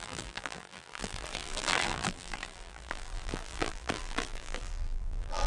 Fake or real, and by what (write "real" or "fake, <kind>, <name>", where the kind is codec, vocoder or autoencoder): fake, vocoder, BigVGAN v2